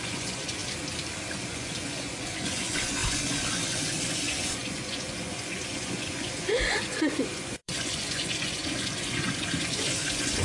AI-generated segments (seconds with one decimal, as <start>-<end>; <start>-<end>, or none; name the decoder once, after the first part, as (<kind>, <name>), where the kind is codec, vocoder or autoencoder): 0.0-0.6 (vocoder, Vocos); 1.5-10.4